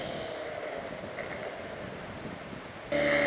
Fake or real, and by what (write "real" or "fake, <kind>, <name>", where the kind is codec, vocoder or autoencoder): real